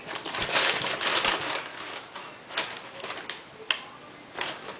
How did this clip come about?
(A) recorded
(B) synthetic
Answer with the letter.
A